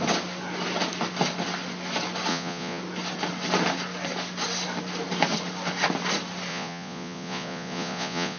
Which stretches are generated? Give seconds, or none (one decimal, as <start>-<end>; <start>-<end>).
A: 2.3-2.8; 6.5-8.4

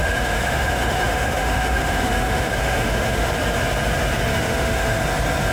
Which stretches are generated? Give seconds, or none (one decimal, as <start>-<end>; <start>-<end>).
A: 0.0-3.3; 4.3-5.0

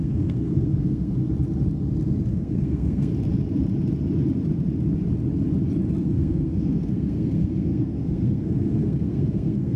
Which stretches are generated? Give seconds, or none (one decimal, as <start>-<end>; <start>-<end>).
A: 0.0-1.2; 2.3-3.1; 6.0-9.8

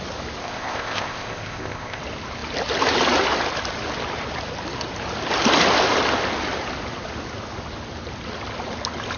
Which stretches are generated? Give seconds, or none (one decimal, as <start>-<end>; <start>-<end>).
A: 0.4-2.0

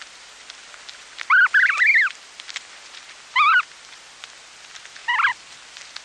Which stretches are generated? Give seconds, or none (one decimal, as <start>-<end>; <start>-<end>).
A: none

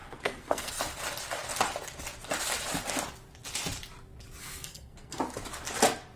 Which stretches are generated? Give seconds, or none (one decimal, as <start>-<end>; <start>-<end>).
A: 0.0-0.7; 4.4-5.2

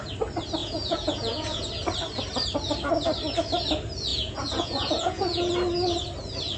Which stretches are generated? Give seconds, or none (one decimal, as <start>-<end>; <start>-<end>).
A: 0.6-1.7; 4.1-5.5